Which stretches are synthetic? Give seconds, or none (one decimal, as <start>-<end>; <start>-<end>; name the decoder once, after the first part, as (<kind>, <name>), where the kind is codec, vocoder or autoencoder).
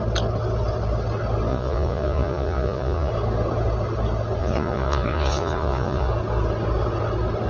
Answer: 1.5-3.1 (vocoder, Vocos); 4.4-6.1